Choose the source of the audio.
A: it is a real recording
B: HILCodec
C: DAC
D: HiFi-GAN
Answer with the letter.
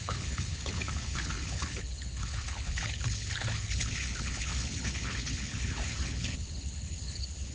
B